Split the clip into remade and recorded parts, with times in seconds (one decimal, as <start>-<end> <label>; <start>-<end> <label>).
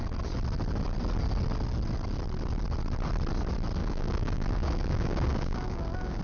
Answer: 0.0-3.8 recorded; 3.8-6.2 remade